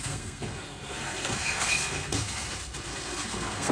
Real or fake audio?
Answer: fake